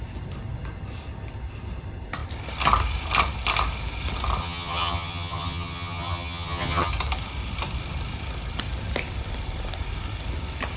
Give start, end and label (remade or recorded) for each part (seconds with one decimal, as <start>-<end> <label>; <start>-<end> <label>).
0.0-4.4 recorded; 4.4-6.9 remade; 6.9-10.8 recorded